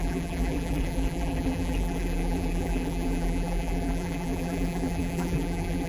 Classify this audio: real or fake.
fake